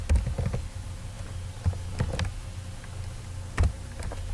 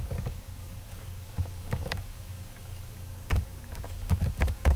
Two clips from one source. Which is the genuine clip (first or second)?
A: first